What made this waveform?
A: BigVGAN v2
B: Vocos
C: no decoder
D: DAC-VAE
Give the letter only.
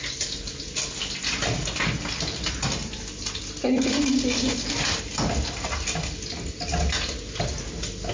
C